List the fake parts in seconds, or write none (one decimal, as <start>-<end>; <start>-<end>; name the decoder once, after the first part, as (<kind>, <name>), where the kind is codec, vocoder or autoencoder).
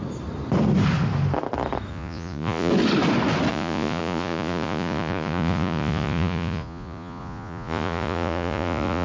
1.9-2.7 (vocoder, Vocos); 3.5-9.0